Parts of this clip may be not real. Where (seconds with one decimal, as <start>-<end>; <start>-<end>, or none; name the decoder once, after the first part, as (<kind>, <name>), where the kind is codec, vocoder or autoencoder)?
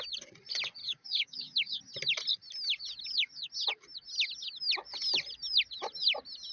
0.8-1.8 (codec, DAC)